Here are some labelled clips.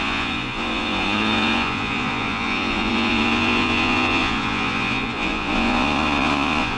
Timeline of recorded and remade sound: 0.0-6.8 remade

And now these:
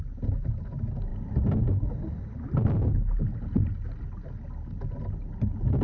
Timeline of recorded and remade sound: 0.0-5.8 recorded

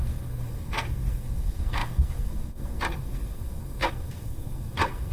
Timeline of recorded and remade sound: 0.0-5.1 remade

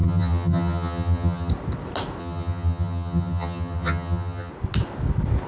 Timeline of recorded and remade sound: 0.0-1.5 remade; 1.5-2.2 recorded; 2.2-4.5 remade; 4.5-5.5 recorded

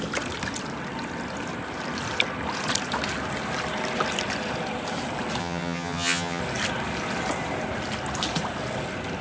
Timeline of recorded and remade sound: 0.0-5.4 recorded; 5.4-6.4 remade; 6.4-9.2 recorded